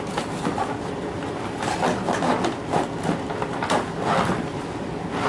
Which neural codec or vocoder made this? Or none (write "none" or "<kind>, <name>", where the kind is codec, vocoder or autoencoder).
none